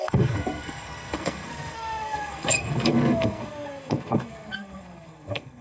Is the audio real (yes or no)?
no